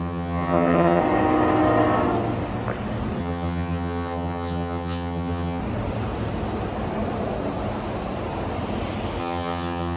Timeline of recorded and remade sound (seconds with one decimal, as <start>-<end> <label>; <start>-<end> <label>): 0.0-1.0 remade; 1.0-3.2 recorded; 3.2-5.6 remade; 5.6-9.2 recorded; 9.2-10.0 remade